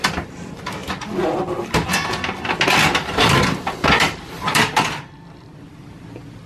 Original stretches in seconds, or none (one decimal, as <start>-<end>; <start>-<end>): 0.0-6.5

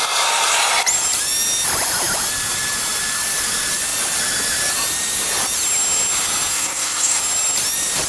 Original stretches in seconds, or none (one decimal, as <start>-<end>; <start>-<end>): 0.0-6.5; 7.2-8.1

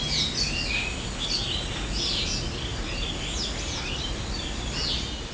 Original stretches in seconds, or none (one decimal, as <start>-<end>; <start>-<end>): 0.0-5.3

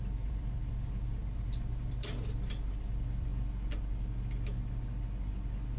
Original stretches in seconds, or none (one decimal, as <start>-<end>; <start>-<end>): 3.3-5.8

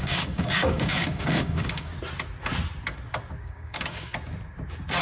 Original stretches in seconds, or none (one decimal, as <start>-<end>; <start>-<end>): 1.9-3.4; 4.1-5.0

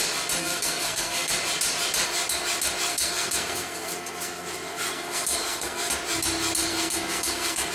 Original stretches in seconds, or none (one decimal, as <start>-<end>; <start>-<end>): 0.0-0.4; 1.3-2.9; 5.9-6.7

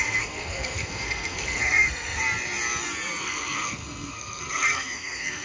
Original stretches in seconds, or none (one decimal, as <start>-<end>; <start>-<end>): 2.2-3.2